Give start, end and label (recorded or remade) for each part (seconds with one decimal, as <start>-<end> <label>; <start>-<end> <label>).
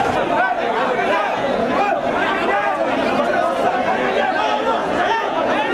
0.0-1.2 recorded; 1.2-1.9 remade; 1.9-4.8 recorded; 4.8-5.7 remade